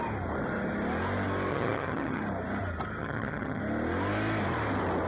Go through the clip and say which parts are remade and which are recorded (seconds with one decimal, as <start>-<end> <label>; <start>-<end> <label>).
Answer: 0.0-1.5 recorded; 1.5-2.2 remade; 2.2-3.0 recorded; 3.0-3.6 remade; 3.6-5.1 recorded